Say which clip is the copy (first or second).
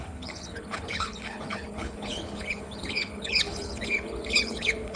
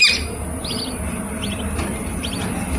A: first